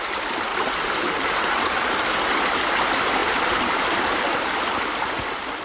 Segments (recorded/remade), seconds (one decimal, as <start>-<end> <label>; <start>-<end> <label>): 0.0-0.5 recorded; 0.5-1.8 remade; 1.8-3.2 recorded; 3.2-4.0 remade; 4.0-5.6 recorded